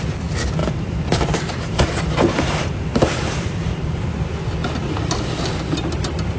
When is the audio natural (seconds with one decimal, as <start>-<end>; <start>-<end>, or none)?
0.0-0.6; 4.1-6.4